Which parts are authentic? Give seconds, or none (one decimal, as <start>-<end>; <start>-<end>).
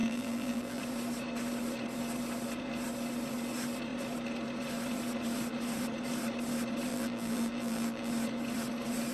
0.8-6.9; 8.1-9.1